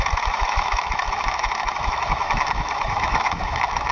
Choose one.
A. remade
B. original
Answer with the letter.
A